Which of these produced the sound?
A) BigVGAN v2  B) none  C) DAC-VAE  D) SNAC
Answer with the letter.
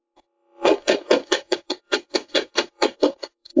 D